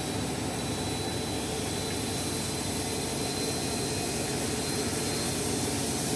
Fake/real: real